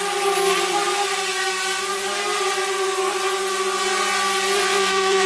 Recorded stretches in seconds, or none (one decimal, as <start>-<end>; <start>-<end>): 0.0-4.6